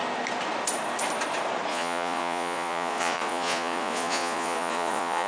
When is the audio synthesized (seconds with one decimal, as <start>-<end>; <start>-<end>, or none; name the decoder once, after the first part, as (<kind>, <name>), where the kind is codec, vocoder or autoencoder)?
1.7-5.3 (vocoder, Vocos)